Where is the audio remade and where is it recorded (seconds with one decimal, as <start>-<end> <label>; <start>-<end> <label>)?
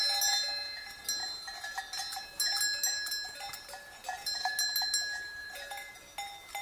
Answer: 0.0-5.4 recorded; 5.4-5.9 remade; 5.9-6.6 recorded